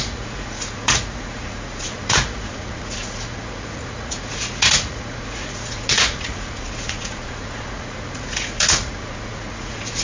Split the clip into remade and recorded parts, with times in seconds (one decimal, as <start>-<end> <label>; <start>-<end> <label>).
0.0-10.0 remade

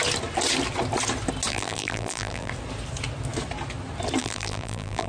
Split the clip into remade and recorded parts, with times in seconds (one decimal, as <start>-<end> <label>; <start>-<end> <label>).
0.0-1.5 recorded; 1.5-2.5 remade; 2.5-4.2 recorded; 4.2-5.1 remade

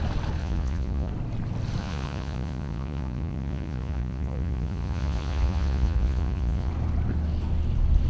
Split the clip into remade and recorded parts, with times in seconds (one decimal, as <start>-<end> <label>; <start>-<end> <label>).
0.0-0.4 recorded; 0.4-1.1 remade; 1.1-1.8 recorded; 1.8-6.7 remade; 6.7-8.1 recorded

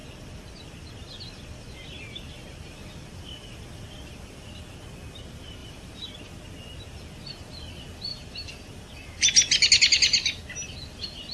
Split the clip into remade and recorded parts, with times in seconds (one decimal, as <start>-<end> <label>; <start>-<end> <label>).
0.0-4.6 remade; 4.6-5.6 recorded; 5.6-6.1 remade; 6.1-8.1 recorded; 8.1-9.2 remade; 9.2-11.3 recorded

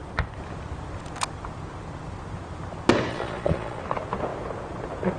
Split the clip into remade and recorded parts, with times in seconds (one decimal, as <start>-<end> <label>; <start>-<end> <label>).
0.0-3.1 recorded; 3.1-3.8 remade; 3.8-5.2 recorded

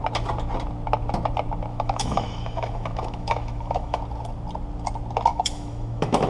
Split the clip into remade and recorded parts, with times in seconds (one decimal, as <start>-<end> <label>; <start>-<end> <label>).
0.0-1.7 recorded; 1.7-4.0 remade; 4.0-5.3 recorded; 5.3-6.3 remade

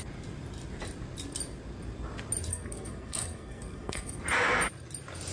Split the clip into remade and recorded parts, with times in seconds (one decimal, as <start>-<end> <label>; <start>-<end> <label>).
0.0-2.5 recorded; 2.5-4.2 remade; 4.2-5.3 recorded

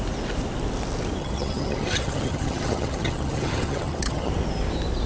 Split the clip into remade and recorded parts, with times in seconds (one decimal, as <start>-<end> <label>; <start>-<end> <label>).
0.0-1.2 recorded; 1.2-4.3 remade; 4.3-5.1 recorded